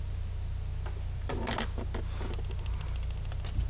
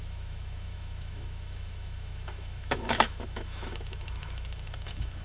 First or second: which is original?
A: first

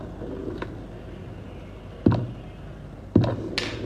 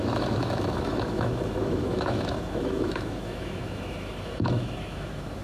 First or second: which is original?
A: first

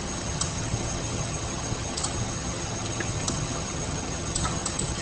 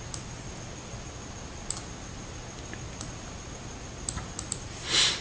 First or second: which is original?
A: second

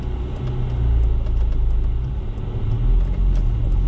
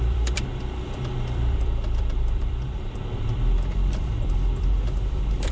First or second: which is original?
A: first